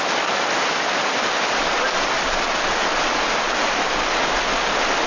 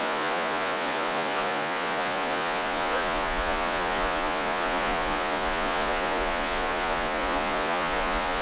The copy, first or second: second